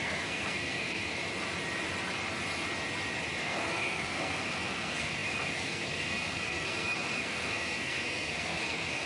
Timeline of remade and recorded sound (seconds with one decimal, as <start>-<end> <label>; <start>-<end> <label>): 0.0-1.0 remade; 1.0-3.4 recorded; 3.4-9.1 remade